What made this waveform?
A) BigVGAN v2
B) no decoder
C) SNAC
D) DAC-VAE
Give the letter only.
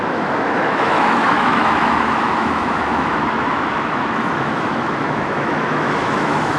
D